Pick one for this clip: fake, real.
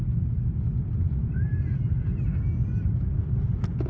real